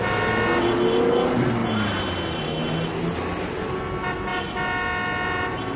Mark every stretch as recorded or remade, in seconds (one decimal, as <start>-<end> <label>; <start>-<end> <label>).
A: 0.0-5.8 recorded